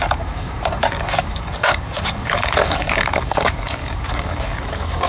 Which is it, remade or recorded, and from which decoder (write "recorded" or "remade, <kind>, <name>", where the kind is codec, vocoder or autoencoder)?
remade, codec, DAC